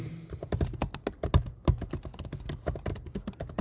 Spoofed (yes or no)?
no